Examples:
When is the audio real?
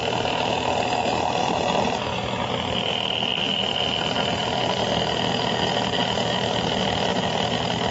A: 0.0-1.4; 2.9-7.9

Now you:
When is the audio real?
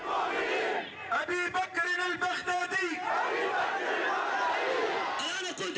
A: 0.0-2.4; 3.1-5.8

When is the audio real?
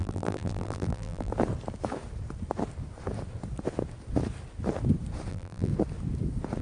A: 1.3-5.3; 5.7-6.6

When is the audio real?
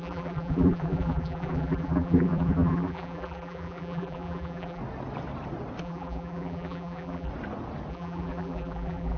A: 4.8-5.8; 7.3-7.9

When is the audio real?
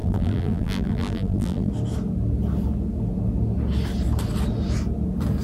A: 1.7-5.4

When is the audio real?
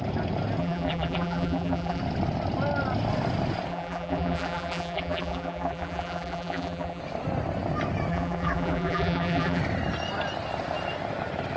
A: 0.0-0.6; 2.0-3.7; 7.0-8.1; 9.6-11.6